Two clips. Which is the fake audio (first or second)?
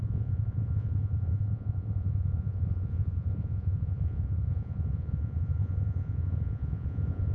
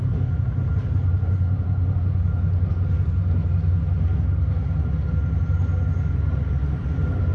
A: first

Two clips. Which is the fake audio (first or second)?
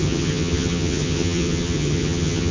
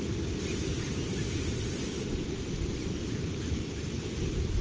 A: first